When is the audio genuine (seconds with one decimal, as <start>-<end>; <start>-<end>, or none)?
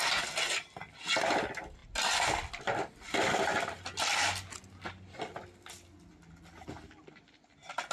0.0-7.9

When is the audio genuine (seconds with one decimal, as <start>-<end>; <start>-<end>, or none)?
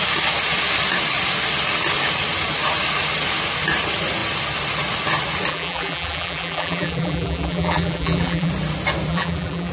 0.0-5.5; 8.5-9.1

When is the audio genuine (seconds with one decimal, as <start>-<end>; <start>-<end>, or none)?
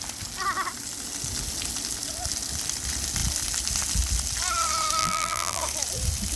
0.0-5.0; 5.6-6.4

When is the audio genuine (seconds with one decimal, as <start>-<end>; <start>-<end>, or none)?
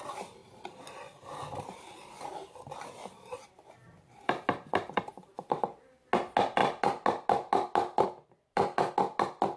0.0-0.4; 5.6-9.6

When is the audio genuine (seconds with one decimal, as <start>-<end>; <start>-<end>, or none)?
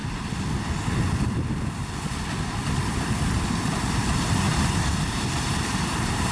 0.0-2.9